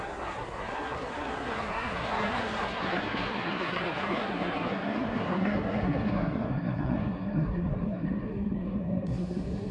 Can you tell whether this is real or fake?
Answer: fake